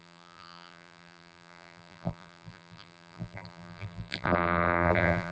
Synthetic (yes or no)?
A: yes